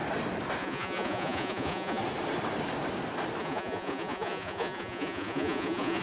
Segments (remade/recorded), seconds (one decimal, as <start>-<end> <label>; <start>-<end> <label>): 0.0-0.6 recorded; 0.6-2.0 remade; 2.0-3.4 recorded; 3.4-6.0 remade